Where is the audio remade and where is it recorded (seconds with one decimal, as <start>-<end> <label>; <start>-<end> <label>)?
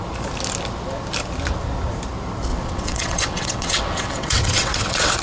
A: 0.0-2.5 recorded; 2.5-5.2 remade